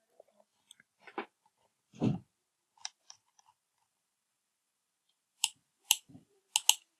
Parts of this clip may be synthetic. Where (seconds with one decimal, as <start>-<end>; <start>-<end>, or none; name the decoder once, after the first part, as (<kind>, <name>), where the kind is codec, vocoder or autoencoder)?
2.8-6.4 (vocoder, BigVGAN v2)